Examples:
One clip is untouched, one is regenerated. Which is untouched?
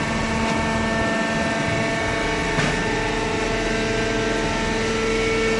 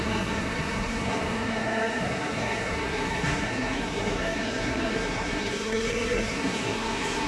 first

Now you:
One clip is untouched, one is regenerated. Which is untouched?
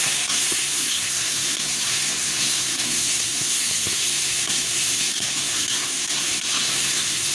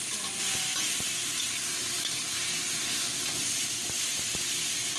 second